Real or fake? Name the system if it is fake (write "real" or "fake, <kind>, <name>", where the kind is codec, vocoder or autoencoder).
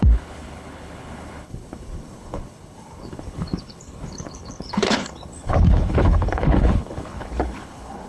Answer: fake, codec, HILCodec